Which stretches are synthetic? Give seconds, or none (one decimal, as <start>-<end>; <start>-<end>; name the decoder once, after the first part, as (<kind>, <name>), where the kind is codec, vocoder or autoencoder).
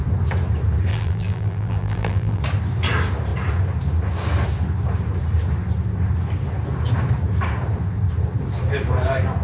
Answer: 0.9-2.4 (vocoder, BigVGAN v2)